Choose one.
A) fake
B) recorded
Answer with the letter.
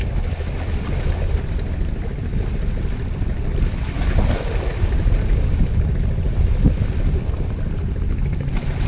B